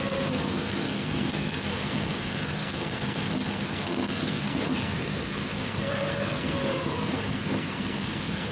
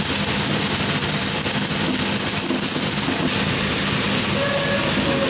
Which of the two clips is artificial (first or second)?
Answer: first